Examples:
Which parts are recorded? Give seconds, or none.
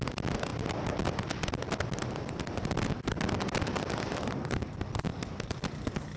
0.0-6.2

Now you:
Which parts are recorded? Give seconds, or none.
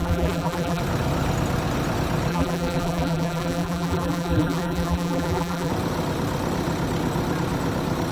0.8-2.3; 5.7-8.1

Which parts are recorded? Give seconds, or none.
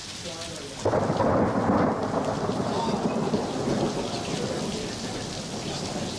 0.0-6.2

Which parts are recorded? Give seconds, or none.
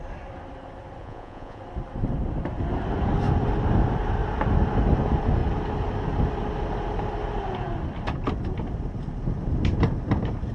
0.0-1.0; 1.6-10.5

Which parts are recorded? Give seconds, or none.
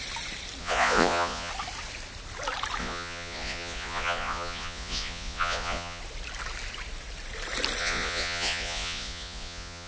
0.0-0.6; 1.5-2.8; 6.0-7.8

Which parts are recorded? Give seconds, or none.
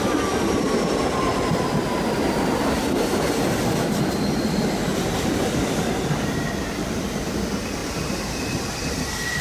0.0-9.4